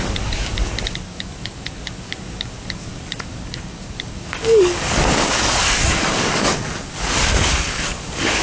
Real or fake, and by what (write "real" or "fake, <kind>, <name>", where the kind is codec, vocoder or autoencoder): fake, codec, DAC